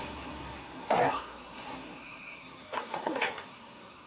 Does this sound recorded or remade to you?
remade